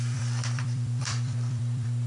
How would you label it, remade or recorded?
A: remade